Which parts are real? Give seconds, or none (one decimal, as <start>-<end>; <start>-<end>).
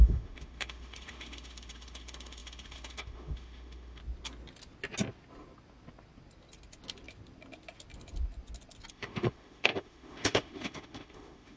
4.0-8.9